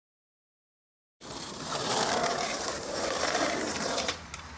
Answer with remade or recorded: remade